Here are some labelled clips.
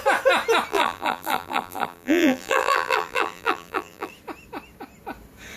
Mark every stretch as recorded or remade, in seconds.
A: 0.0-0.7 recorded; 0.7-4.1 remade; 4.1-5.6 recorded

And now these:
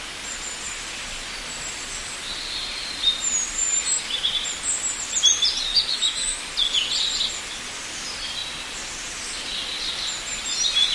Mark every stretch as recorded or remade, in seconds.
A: 0.0-5.7 recorded; 5.7-6.4 remade; 6.4-10.9 recorded